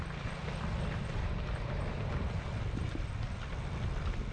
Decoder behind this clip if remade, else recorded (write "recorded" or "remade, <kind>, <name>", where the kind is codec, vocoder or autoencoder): recorded